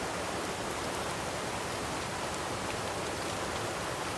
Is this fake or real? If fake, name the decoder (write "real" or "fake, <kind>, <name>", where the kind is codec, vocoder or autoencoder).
real